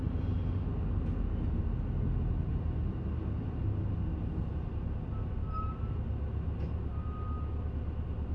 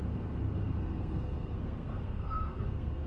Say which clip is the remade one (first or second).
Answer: second